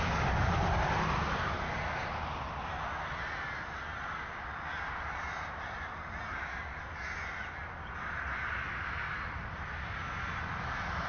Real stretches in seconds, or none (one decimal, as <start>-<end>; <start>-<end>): 0.0-11.1